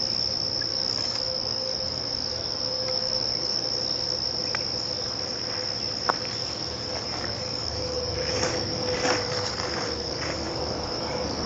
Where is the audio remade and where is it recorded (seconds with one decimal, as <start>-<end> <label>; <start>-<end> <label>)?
0.0-0.7 recorded; 0.7-3.7 remade; 3.7-6.4 recorded; 6.4-11.5 remade